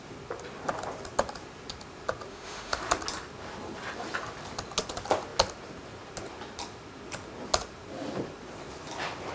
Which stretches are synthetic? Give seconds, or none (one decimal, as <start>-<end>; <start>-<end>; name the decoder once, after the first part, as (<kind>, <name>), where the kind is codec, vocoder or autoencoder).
2.3-2.8 (autoencoder, DAC-VAE)

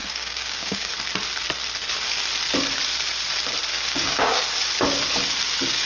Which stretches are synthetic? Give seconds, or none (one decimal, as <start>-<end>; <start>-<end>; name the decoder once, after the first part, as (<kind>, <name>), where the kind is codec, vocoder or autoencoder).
0.0-0.9 (codec, DAC); 3.7-4.4

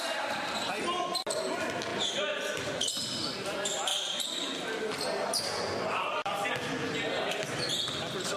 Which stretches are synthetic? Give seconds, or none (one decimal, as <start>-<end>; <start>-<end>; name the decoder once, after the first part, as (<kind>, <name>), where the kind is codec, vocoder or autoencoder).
1.9-2.6 (vocoder, BigVGAN v2); 3.9-6.5

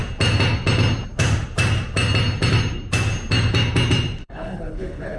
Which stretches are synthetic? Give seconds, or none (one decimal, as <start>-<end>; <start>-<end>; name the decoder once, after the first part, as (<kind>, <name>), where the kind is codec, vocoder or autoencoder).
4.2-5.2 (codec, HILCodec)